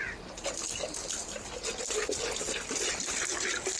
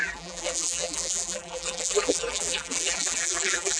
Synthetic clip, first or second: second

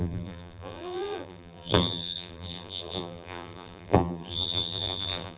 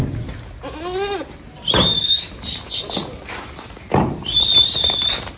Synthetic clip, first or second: first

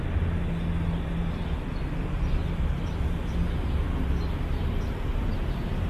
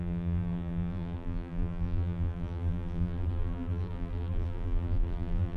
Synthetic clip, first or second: second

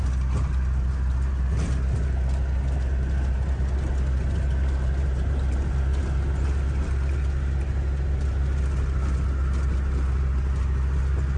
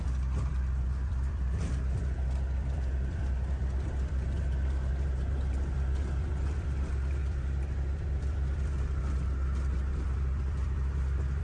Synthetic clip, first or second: second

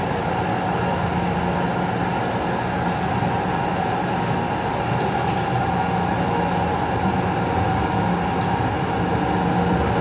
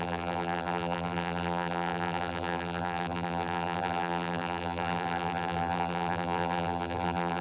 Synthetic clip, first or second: second